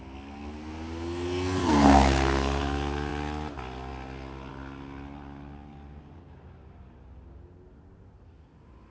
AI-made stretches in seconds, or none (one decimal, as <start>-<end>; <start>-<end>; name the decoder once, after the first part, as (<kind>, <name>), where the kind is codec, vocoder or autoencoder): 1.6-2.6 (codec, SNAC)